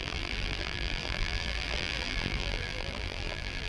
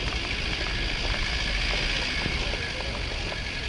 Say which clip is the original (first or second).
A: second